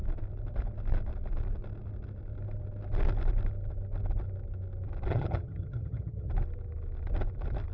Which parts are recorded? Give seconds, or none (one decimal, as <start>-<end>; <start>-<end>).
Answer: 0.0-5.1; 6.3-7.7